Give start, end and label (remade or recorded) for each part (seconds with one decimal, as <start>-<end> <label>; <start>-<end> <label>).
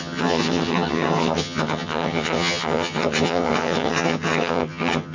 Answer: 0.0-5.1 remade